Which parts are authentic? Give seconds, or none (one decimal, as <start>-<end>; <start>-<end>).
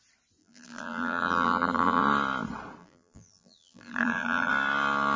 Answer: 0.0-0.4; 2.0-2.8; 4.5-5.2